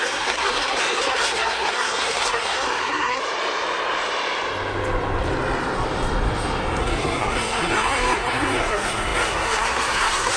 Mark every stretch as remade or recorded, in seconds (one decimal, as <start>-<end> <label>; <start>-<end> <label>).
0.0-3.2 remade; 3.2-6.8 recorded; 6.8-10.4 remade